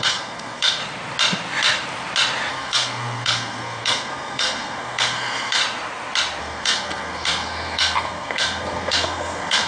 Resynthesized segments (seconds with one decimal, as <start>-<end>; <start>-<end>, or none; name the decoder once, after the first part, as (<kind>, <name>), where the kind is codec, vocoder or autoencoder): 0.0-0.8 (codec, SNAC); 2.5-5.6; 6.4-9.7